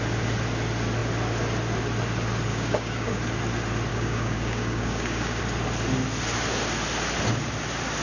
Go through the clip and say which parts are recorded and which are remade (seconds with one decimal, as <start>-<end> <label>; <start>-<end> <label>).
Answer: 0.0-2.5 recorded; 2.5-3.2 remade; 3.2-3.9 recorded; 3.9-5.4 remade; 5.4-8.0 recorded